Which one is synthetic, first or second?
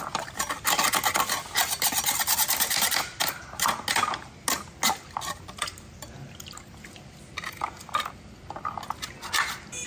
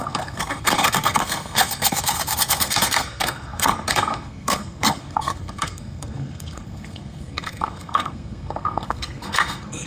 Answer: second